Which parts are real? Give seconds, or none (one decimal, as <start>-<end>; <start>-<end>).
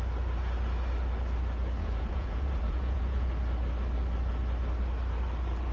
0.0-1.8; 3.3-5.7